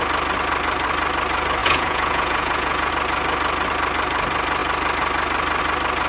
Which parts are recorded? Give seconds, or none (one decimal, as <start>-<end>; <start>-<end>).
0.0-1.6; 2.9-6.1